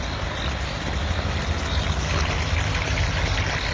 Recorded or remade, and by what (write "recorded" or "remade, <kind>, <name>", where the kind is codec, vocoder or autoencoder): recorded